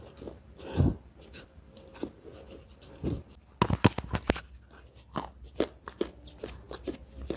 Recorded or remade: recorded